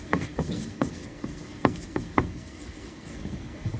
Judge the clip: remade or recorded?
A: remade